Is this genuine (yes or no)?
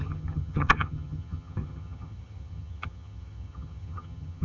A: no